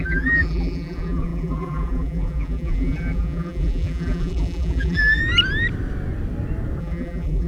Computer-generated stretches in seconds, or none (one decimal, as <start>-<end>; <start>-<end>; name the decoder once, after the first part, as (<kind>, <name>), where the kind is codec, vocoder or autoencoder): 0.0-5.2 (vocoder, BigVGAN v2); 6.8-7.5